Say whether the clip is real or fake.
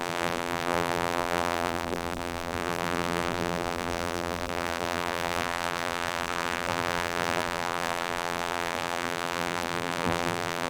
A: fake